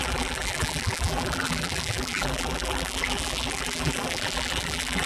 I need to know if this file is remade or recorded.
remade